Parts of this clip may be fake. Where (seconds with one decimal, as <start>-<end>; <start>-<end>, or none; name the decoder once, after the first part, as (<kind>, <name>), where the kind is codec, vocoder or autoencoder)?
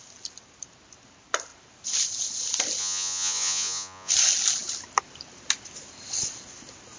2.8-4.1 (vocoder, Vocos)